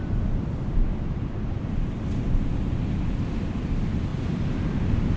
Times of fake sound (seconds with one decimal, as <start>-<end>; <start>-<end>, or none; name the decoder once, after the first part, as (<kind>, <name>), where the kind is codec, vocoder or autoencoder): none